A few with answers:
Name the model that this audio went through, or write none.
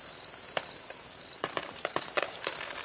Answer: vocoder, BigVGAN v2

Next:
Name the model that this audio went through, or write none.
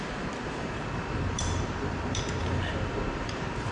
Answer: vocoder, BigVGAN v2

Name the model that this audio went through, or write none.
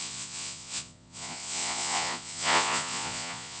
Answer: vocoder, Vocos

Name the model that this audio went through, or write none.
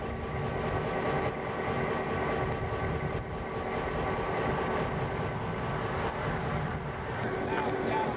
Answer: none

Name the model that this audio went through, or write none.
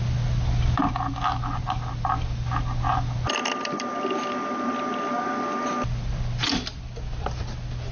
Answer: none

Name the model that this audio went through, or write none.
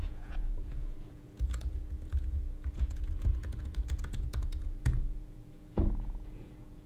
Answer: vocoder, Vocos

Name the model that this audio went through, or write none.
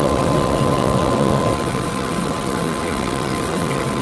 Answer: vocoder, WaveNeXt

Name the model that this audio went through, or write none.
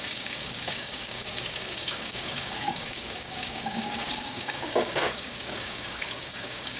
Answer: codec, DAC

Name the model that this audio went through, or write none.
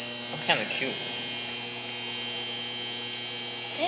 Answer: none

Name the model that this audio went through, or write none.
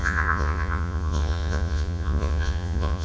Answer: vocoder, Vocos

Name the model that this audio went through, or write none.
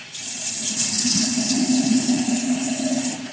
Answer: vocoder, Vocos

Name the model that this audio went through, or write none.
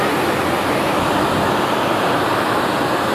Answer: none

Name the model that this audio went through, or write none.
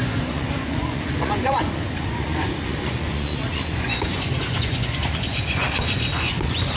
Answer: vocoder, Vocos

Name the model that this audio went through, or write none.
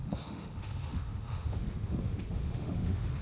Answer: autoencoder, DAC-VAE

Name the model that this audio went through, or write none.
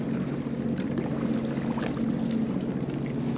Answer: none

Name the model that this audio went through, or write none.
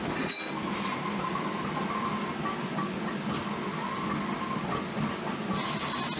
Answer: none